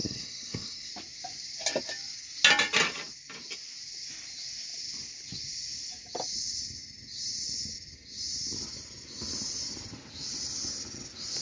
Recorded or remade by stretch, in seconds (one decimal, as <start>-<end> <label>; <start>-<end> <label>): 0.0-0.9 remade; 0.9-11.4 recorded